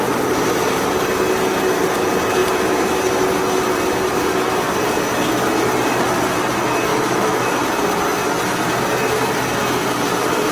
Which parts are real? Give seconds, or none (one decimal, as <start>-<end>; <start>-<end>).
0.0-6.9; 7.6-10.5